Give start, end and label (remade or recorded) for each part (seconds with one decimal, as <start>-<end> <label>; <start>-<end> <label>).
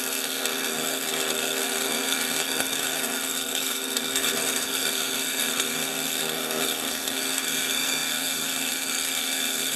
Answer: 0.0-9.8 remade